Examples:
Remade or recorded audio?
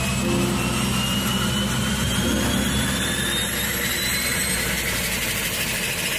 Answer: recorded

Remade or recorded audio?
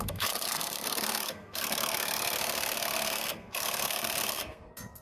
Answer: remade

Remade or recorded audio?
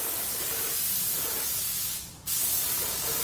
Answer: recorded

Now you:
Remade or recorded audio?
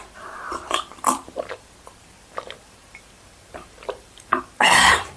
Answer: remade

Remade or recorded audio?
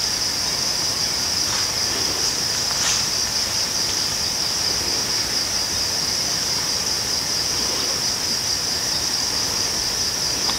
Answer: recorded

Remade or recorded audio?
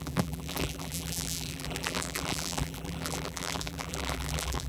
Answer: remade